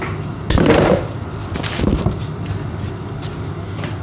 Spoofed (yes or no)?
no